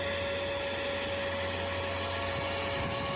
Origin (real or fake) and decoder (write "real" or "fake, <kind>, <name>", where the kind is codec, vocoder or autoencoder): real